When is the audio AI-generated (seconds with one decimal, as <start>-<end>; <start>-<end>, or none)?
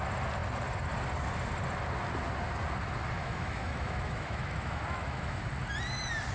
3.2-5.5